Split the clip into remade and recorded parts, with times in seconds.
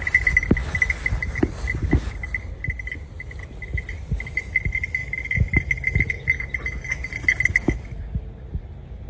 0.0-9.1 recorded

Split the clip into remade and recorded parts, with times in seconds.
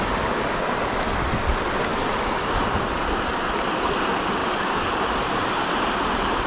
0.0-1.9 recorded; 1.9-2.6 remade; 2.6-4.4 recorded; 4.4-5.7 remade; 5.7-6.5 recorded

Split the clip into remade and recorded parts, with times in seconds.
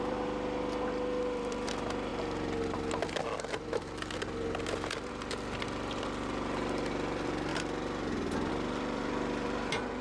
0.0-2.1 remade; 2.1-5.1 recorded; 5.1-7.5 remade; 7.5-8.5 recorded; 8.5-10.0 remade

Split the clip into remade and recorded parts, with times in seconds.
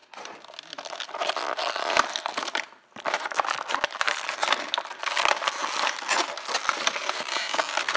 0.0-7.0 recorded; 7.0-7.6 remade; 7.6-8.0 recorded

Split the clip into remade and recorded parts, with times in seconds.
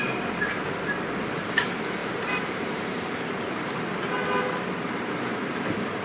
0.0-2.0 recorded; 2.0-3.8 remade; 3.8-6.0 recorded